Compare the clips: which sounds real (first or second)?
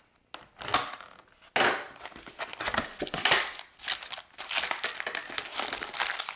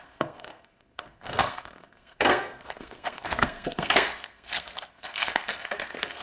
first